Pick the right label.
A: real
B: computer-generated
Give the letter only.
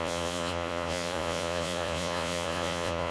B